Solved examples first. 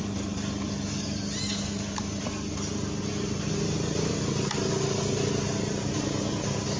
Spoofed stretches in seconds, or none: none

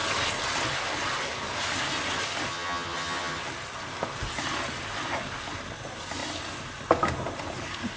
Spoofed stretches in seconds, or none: 2.5-3.4 (vocoder, HiFi-GAN)

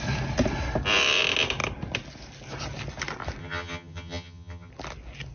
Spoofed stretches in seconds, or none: 3.4-4.7 (vocoder, HiFi-GAN)

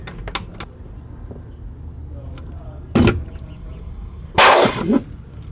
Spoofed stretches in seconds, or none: none

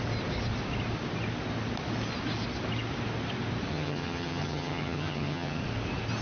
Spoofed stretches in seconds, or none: 3.7-5.6 (vocoder, HiFi-GAN)

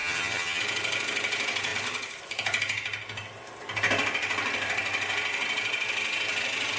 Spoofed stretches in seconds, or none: 0.0-0.6 (vocoder, HiFi-GAN)

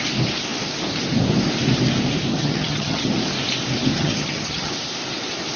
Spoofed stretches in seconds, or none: 2.3-3.1 (vocoder, HiFi-GAN); 3.9-4.7